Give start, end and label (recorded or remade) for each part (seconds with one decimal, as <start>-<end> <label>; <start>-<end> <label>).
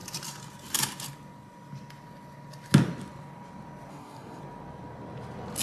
0.0-3.9 recorded; 3.9-4.4 remade; 4.4-5.6 recorded